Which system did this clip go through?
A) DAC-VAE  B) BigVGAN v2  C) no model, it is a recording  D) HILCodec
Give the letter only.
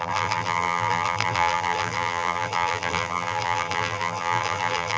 B